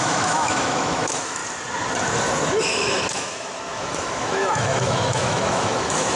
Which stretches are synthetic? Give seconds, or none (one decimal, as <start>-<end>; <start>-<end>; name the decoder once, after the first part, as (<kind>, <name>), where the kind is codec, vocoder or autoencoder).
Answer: 0.0-1.4 (autoencoder, DAC-VAE); 2.6-6.2